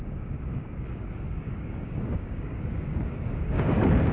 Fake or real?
fake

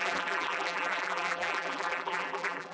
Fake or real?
fake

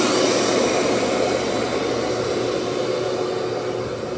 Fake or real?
real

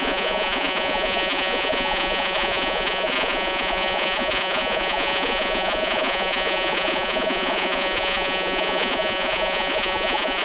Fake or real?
fake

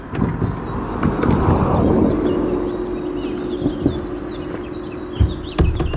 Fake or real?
real